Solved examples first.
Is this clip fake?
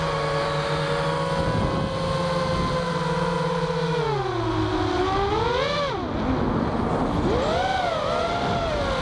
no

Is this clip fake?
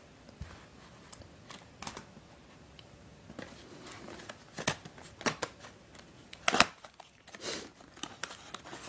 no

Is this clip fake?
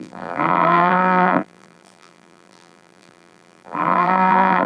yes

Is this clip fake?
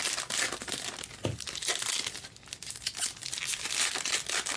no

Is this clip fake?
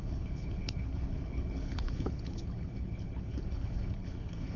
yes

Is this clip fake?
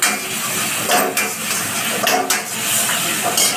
no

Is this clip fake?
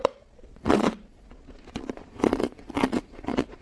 yes